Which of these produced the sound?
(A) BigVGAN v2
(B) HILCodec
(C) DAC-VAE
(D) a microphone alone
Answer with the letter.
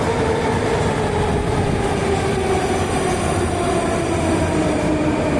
D